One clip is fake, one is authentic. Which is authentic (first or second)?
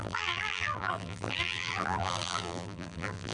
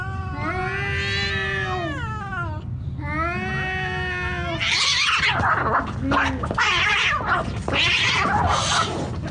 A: second